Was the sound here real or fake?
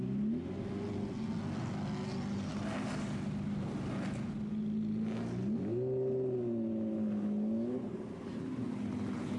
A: real